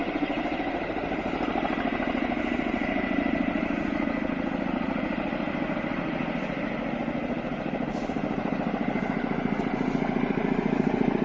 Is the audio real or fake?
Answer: real